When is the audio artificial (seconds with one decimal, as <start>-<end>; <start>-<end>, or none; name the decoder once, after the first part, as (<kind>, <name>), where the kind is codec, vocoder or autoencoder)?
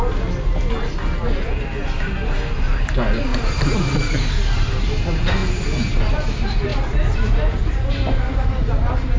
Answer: 3.3-3.8 (vocoder, BigVGAN v2); 6.7-7.7